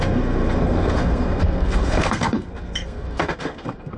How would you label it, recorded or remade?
remade